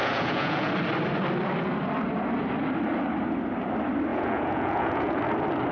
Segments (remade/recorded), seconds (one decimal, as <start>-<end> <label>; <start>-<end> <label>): 0.0-0.7 remade; 0.7-4.1 recorded; 4.1-5.2 remade; 5.2-5.7 recorded

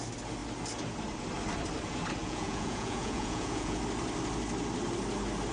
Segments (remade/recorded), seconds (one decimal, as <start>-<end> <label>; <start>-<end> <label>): 0.0-2.2 recorded; 2.2-3.8 remade; 3.8-5.5 recorded

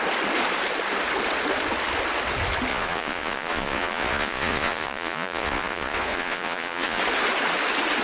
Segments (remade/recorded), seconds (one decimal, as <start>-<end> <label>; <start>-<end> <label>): 0.0-2.7 recorded; 2.7-7.0 remade; 7.0-8.0 recorded

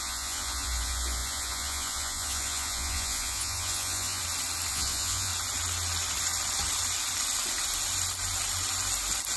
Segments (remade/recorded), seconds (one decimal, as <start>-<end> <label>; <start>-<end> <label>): 0.0-4.2 remade; 4.2-4.7 recorded; 4.7-5.3 remade; 5.3-9.4 recorded